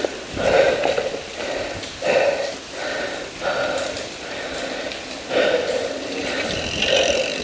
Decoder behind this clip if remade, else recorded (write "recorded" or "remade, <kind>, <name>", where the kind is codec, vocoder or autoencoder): remade, vocoder, BigVGAN v2